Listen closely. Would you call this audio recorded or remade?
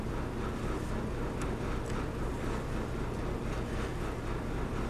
recorded